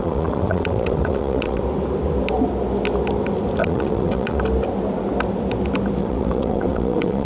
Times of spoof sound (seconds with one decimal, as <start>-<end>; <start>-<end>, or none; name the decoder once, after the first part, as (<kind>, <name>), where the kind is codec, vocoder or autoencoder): 0.0-1.6 (vocoder, WaveNeXt); 3.6-4.4; 6.0-7.3

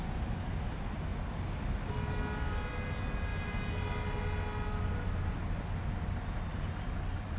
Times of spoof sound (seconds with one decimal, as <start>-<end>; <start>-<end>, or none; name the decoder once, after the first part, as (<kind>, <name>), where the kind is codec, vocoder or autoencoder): none

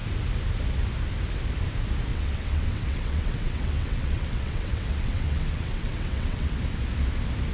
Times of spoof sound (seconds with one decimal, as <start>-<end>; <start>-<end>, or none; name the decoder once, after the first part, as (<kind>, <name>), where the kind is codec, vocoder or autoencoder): 2.1-6.6 (vocoder, WaveNeXt)

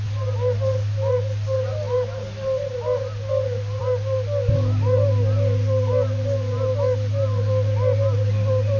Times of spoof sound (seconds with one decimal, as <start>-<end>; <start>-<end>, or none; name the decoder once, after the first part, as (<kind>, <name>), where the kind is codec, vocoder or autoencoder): none

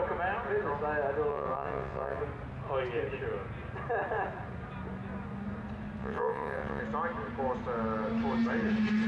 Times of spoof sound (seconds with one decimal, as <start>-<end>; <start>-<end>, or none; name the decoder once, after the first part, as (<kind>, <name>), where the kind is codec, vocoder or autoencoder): 1.3-2.2 (vocoder, WaveNeXt); 6.0-6.8

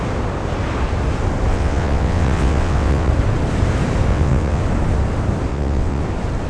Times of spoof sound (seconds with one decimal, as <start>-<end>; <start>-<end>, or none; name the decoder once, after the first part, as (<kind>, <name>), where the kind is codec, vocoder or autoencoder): 1.5-3.1 (vocoder, WaveNeXt); 4.1-4.6; 5.5-6.0

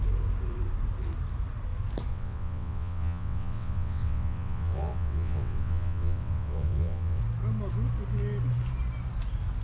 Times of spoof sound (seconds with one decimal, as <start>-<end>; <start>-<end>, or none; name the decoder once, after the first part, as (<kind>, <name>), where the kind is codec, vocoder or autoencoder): 2.1-7.2 (vocoder, WaveNeXt)

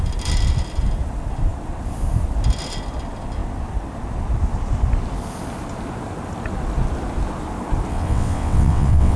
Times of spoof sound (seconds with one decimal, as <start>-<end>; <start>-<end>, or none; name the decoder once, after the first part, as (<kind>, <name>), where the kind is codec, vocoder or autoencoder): 7.9-9.2 (vocoder, WaveNeXt)